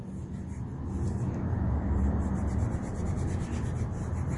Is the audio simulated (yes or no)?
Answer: no